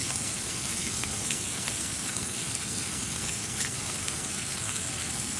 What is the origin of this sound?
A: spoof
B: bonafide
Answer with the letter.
A